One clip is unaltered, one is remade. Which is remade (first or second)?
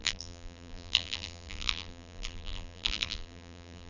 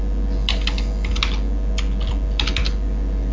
first